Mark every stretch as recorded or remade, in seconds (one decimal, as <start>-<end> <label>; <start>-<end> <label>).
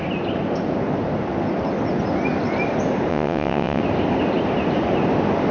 0.0-3.1 recorded; 3.1-3.8 remade; 3.8-5.5 recorded